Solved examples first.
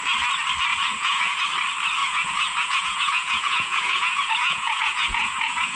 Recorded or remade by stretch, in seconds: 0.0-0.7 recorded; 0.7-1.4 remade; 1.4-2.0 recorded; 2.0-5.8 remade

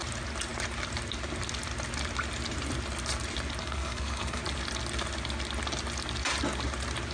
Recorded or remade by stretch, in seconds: 0.0-3.6 recorded; 3.6-4.4 remade; 4.4-7.1 recorded

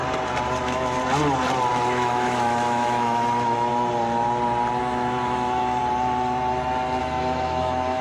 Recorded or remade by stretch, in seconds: 0.0-0.6 recorded; 0.6-1.0 remade; 1.0-1.7 recorded; 1.7-3.7 remade; 3.7-4.8 recorded; 4.8-5.8 remade; 5.8-7.0 recorded; 7.0-8.0 remade

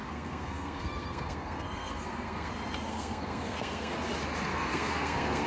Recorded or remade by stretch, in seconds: 0.0-2.5 remade; 2.5-2.9 recorded; 2.9-3.9 remade; 3.9-4.5 recorded; 4.5-5.5 remade

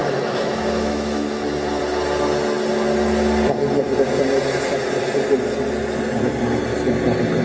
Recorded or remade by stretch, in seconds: 0.0-1.8 remade; 1.8-7.4 recorded